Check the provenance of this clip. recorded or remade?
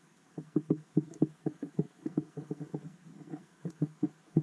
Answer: remade